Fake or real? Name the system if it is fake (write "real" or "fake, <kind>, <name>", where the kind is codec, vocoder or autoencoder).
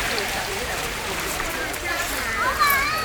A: fake, vocoder, BigVGAN v2